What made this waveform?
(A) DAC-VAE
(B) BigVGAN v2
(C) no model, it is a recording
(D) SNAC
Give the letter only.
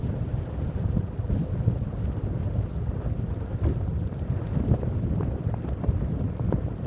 C